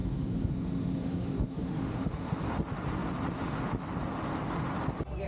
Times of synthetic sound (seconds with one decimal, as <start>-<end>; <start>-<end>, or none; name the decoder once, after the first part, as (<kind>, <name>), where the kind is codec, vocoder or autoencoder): 0.0-2.4 (autoencoder, DAC-VAE)